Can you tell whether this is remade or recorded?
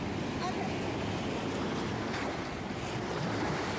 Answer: recorded